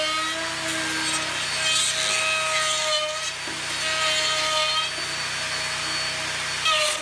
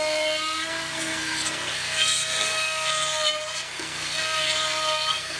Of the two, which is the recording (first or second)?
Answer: first